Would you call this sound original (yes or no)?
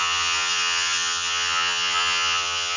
no